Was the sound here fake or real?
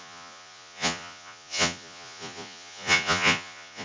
fake